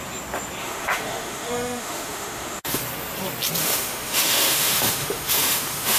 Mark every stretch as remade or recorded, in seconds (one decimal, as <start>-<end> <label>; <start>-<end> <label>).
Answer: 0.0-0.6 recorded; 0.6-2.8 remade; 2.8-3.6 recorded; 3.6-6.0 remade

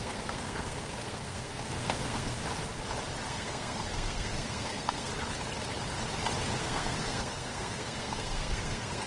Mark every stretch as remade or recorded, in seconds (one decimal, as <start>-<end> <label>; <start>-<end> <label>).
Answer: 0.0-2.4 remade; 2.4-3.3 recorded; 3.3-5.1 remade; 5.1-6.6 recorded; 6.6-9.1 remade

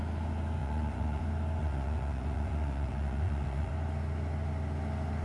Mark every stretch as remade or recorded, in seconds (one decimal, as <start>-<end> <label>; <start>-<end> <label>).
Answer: 0.0-0.6 recorded; 0.6-1.2 remade; 1.2-1.6 recorded; 1.6-3.7 remade; 3.7-5.2 recorded